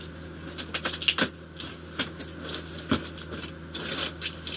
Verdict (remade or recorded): recorded